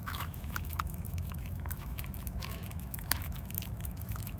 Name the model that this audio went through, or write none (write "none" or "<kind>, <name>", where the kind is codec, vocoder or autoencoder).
autoencoder, DAC-VAE